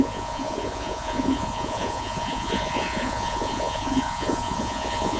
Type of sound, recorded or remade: remade